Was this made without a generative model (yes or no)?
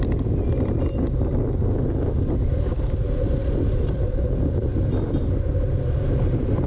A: yes